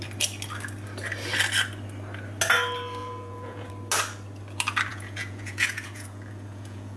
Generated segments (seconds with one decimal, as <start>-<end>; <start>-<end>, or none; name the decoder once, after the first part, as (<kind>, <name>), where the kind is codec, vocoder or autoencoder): 3.0-3.7 (vocoder, Vocos); 4.9-7.0